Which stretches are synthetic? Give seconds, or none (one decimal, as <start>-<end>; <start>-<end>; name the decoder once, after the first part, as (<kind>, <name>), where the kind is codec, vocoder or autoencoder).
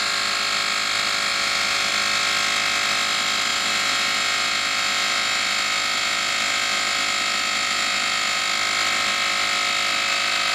1.3-1.9 (vocoder, Vocos); 3.5-8.4